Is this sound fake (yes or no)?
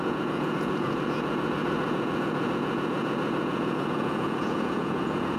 yes